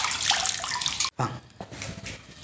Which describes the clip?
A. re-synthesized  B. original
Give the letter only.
B